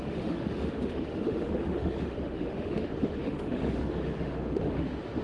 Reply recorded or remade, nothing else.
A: remade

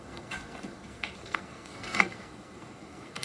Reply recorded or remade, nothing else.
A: remade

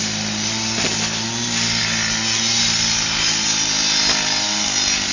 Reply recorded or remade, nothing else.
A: recorded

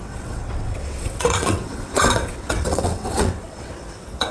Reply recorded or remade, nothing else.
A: remade